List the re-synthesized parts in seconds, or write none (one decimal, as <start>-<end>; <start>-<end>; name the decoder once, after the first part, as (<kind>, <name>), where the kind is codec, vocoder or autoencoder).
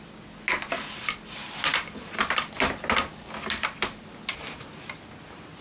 none